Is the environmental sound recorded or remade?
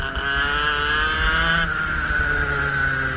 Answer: recorded